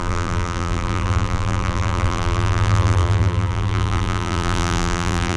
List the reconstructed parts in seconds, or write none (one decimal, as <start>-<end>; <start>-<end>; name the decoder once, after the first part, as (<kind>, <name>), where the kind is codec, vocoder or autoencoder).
0.0-5.4 (vocoder, BigVGAN v2)

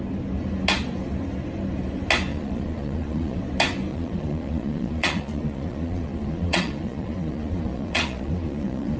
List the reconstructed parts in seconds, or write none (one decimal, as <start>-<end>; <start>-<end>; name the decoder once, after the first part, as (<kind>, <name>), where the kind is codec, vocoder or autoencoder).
2.3-3.4 (vocoder, Vocos); 3.9-9.0

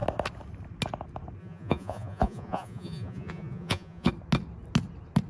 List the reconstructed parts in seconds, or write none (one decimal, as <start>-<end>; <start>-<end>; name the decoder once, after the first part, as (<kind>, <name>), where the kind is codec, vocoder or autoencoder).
1.4-4.1 (vocoder, Vocos)

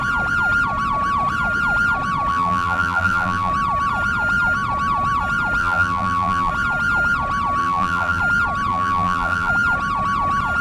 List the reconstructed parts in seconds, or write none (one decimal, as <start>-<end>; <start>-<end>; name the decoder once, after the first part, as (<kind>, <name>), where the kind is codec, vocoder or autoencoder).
2.3-3.5 (vocoder, BigVGAN v2); 5.6-6.5; 7.6-8.2; 8.7-9.5

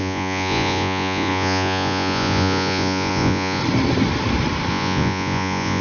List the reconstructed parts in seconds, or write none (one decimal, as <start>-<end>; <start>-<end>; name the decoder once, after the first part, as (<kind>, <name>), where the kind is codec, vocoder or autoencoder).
0.0-3.6 (vocoder, Vocos); 4.7-5.8